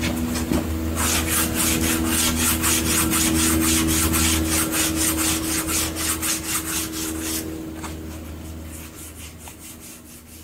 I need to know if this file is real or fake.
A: real